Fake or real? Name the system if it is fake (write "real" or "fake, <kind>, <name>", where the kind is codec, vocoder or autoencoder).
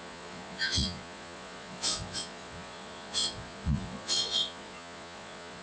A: fake, vocoder, Vocos